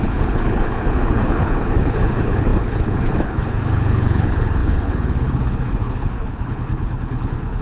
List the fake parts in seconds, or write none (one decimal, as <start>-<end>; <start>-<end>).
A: 0.0-7.6